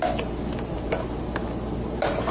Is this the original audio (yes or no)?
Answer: yes